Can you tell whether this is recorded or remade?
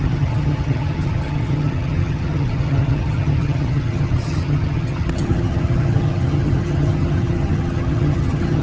remade